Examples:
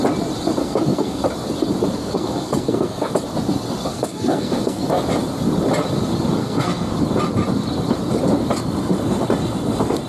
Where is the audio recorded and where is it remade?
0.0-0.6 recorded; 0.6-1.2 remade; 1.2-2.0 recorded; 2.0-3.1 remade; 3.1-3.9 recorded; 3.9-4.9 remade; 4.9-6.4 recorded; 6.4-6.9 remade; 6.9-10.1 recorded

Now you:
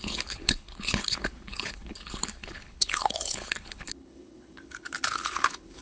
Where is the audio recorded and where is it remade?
0.0-5.8 remade

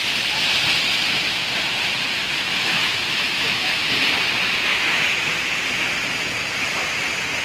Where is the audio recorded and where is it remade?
0.0-2.2 recorded; 2.2-3.9 remade; 3.9-4.7 recorded; 4.7-7.4 remade

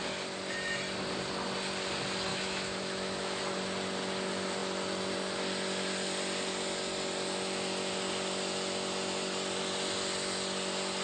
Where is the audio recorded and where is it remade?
0.0-2.3 recorded; 2.3-3.4 remade; 3.4-11.0 recorded